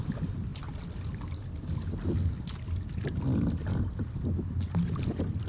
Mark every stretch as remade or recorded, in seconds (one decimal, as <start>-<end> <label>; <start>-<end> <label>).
0.0-5.5 recorded